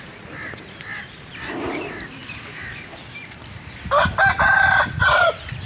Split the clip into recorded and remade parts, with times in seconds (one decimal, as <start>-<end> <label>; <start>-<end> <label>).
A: 0.0-5.7 recorded